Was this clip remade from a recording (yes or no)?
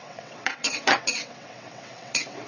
yes